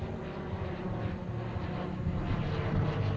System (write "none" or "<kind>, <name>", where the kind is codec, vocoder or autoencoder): none